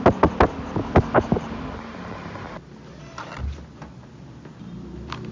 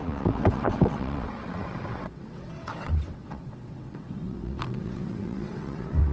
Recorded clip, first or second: first